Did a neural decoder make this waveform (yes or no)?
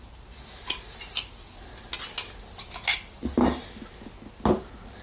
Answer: no